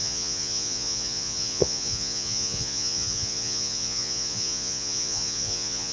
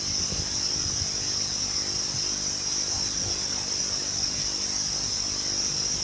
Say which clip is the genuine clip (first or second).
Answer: second